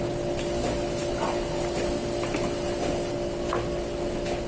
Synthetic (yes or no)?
no